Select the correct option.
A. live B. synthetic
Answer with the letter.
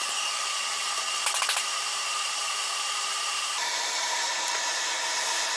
B